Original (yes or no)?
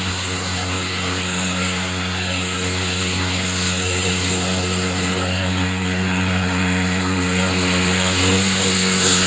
no